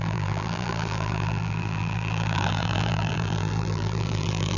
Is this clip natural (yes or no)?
no